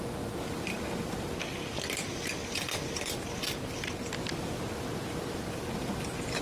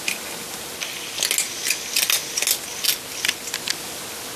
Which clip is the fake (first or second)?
first